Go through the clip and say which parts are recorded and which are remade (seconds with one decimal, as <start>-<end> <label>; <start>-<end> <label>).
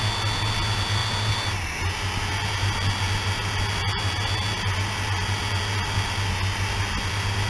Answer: 0.0-7.5 recorded